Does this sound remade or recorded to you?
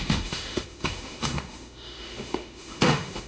remade